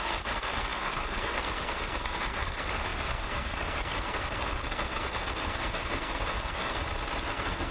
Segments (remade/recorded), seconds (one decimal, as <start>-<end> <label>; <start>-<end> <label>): 0.0-6.8 remade; 6.8-7.3 recorded; 7.3-7.7 remade